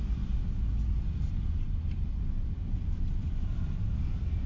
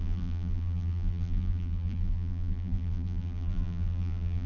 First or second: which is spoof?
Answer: second